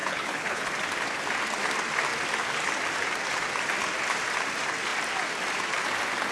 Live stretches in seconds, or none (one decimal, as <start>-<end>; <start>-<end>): 0.7-6.3